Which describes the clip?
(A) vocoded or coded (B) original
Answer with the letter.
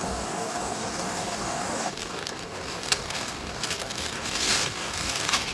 A